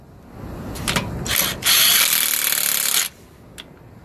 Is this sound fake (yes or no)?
no